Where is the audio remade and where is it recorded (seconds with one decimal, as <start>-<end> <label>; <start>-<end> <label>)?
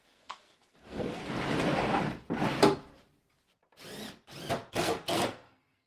0.0-1.2 remade; 1.2-4.7 recorded; 4.7-5.9 remade